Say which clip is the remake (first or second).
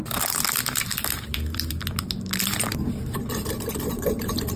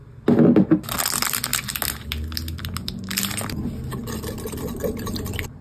first